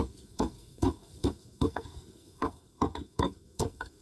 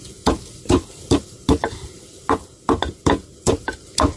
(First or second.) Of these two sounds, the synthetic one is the first